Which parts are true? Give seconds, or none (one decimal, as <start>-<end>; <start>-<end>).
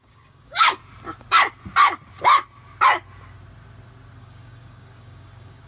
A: 0.8-4.2